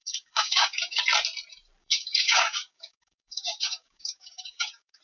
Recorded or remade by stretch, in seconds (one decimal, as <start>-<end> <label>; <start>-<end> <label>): 0.0-1.0 remade; 1.0-1.8 recorded; 1.8-5.0 remade